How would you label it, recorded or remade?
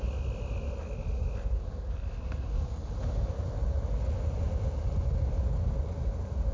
recorded